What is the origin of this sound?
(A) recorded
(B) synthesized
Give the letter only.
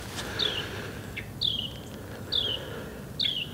A